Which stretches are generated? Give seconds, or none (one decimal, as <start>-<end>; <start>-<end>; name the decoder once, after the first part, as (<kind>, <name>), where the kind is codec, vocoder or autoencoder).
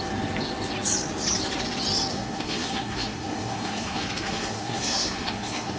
2.1-5.8 (codec, SNAC)